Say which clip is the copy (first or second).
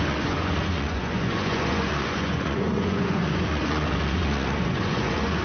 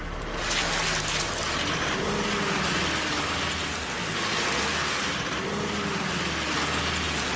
first